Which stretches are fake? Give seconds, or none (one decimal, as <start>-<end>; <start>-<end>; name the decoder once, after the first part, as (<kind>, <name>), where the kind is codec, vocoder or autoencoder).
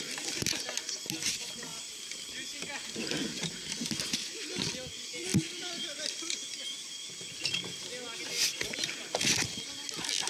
none